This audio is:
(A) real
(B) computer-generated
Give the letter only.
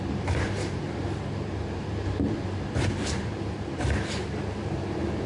B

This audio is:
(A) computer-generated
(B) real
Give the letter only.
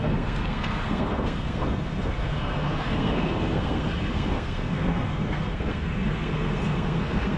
A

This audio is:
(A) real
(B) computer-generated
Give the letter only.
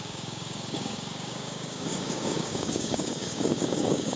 B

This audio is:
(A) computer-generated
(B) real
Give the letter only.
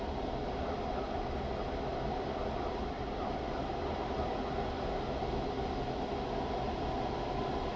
B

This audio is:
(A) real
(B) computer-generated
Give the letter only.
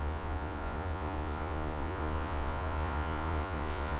B